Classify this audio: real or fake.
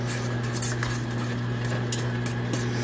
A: real